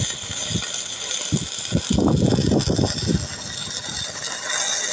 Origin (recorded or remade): recorded